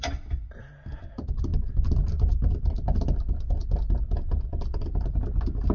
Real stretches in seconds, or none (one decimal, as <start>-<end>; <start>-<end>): 0.0-5.7